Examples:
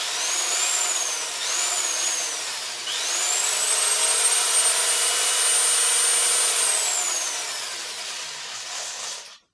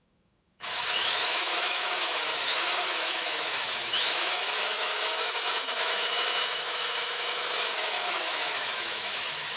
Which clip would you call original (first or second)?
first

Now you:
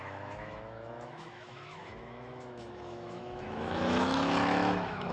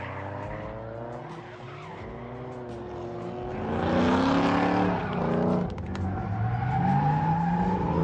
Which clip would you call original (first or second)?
second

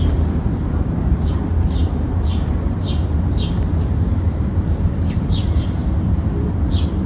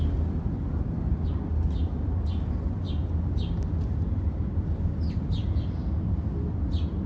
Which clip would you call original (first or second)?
second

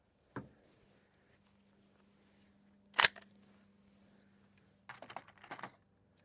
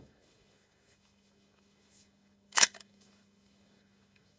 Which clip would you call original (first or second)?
first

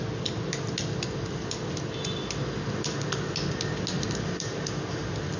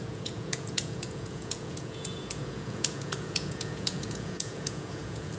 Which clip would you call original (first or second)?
first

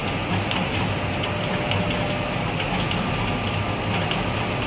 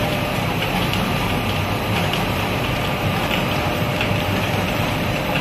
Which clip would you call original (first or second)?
first